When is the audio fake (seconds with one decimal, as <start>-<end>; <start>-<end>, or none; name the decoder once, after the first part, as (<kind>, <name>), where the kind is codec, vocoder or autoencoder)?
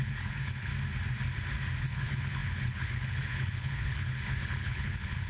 0.0-0.7 (codec, HILCodec); 1.8-5.3